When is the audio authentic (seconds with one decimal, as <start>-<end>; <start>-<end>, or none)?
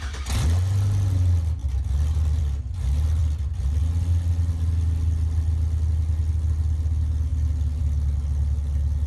0.0-9.1